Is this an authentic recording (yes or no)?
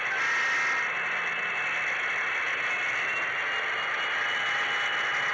yes